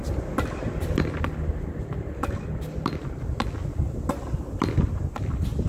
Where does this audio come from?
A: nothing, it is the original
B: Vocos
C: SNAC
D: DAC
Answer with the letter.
A